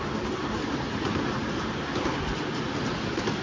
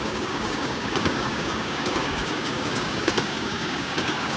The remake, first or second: second